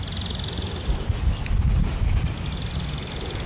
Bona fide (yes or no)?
yes